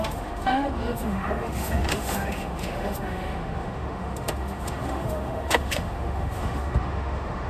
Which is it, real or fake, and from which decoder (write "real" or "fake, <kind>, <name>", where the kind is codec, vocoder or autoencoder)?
fake, autoencoder, DAC-VAE